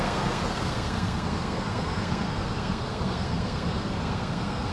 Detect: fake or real fake